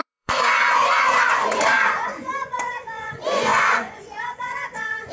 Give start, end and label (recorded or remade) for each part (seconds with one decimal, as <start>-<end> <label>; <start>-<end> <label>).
0.0-5.1 remade